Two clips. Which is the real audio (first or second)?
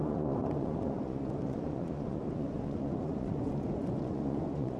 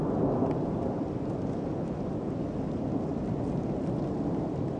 second